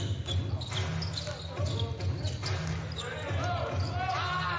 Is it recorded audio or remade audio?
recorded